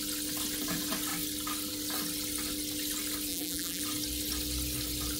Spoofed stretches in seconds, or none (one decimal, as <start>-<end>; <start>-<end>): 3.3-3.8